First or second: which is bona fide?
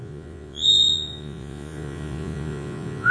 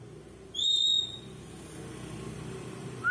second